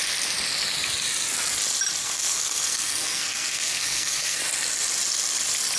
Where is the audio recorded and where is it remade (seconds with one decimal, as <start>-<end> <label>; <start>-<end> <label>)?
0.0-2.0 recorded; 2.0-4.4 remade; 4.4-5.8 recorded